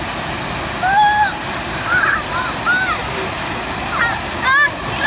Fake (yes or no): no